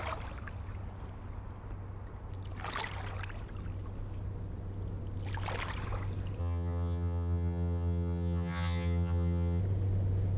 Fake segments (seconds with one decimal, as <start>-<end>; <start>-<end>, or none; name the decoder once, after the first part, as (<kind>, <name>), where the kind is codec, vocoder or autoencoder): 6.4-9.6 (vocoder, HiFi-GAN)